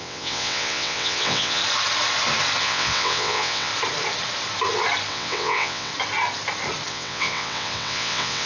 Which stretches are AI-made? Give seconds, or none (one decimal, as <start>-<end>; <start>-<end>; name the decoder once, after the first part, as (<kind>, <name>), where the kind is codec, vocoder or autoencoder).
0.0-1.6 (vocoder, WaveNeXt); 2.6-3.7; 5.1-5.9; 6.9-8.5